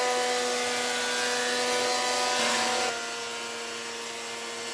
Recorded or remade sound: recorded